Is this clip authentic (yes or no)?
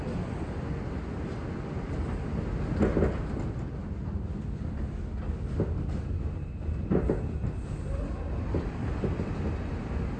yes